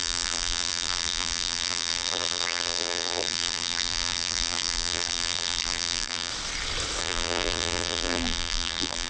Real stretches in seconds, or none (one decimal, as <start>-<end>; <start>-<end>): 6.3-7.0